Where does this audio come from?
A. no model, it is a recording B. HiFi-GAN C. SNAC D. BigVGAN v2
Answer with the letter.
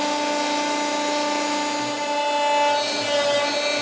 A